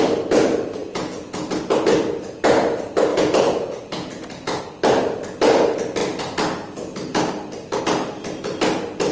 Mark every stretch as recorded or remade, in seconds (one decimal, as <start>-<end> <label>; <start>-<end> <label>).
0.0-0.8 recorded; 0.8-1.6 remade; 1.6-3.1 recorded; 3.1-4.6 remade; 4.6-9.1 recorded